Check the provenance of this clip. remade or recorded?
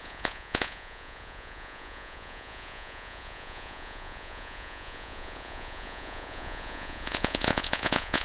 remade